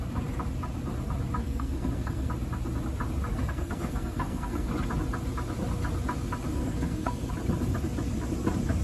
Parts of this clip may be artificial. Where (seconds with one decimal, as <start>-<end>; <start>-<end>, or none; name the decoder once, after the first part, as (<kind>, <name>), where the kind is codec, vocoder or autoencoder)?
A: 1.4-2.3 (codec, SNAC); 3.3-4.7; 6.6-7.3